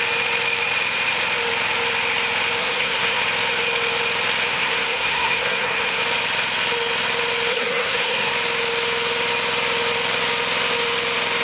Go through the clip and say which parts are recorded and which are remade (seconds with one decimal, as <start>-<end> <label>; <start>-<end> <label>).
0.0-2.6 recorded; 2.6-3.2 remade; 3.2-4.5 recorded; 4.5-6.0 remade; 6.0-7.5 recorded; 7.5-8.3 remade; 8.3-11.4 recorded